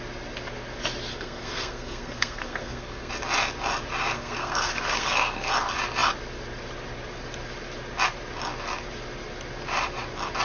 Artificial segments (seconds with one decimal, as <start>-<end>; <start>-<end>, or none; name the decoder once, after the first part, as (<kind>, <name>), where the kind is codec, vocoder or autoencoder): 1.1-3.1 (codec, SNAC); 4.1-5.5